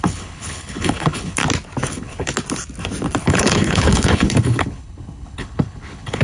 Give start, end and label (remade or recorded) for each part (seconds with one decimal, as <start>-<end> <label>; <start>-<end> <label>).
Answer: 0.0-1.4 remade; 1.4-1.9 recorded; 1.9-2.3 remade; 2.3-3.2 recorded; 3.2-6.2 remade